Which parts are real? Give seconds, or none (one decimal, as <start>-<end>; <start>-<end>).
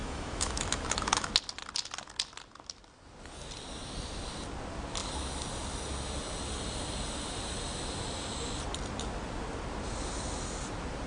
1.3-11.1